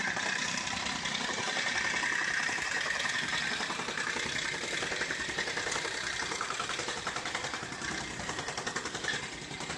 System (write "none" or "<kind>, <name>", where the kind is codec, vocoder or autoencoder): vocoder, BigVGAN v2